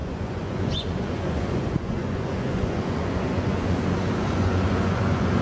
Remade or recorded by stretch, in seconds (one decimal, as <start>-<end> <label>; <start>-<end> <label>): 0.0-5.4 remade